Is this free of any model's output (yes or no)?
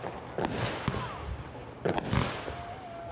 yes